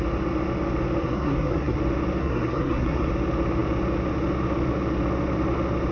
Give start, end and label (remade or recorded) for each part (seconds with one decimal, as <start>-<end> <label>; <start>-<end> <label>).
0.0-1.0 recorded; 1.0-1.8 remade; 1.8-2.2 recorded; 2.2-3.1 remade; 3.1-5.9 recorded